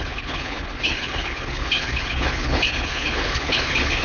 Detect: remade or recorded remade